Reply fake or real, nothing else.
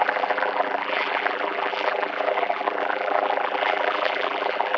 fake